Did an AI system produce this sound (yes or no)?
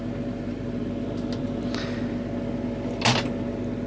no